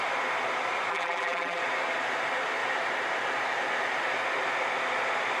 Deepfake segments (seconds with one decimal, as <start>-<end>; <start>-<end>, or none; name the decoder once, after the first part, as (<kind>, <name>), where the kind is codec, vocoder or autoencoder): 0.9-1.6 (vocoder, BigVGAN v2)